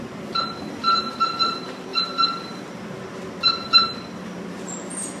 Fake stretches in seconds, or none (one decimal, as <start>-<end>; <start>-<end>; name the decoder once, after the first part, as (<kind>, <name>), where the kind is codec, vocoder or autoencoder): none